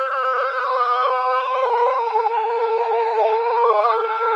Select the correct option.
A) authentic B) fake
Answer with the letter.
B